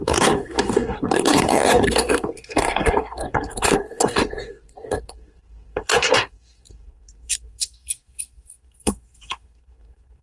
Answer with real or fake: fake